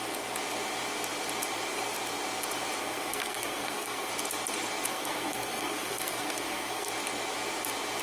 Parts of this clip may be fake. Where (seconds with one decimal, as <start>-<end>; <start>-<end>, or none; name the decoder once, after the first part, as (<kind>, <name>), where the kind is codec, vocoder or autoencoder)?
2.8-4.1 (codec, SNAC); 4.9-6.9